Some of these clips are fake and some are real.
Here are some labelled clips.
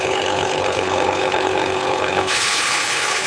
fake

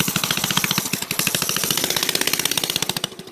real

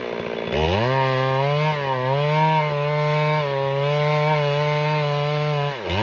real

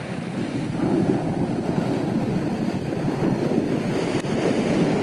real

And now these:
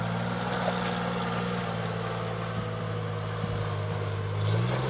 real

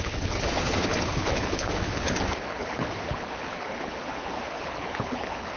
fake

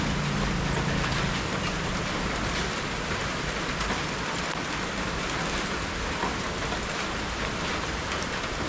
fake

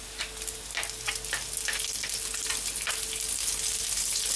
real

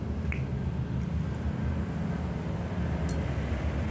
real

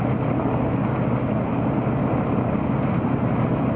real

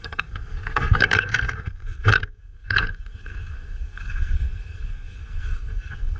fake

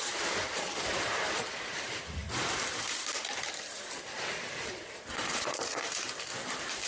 fake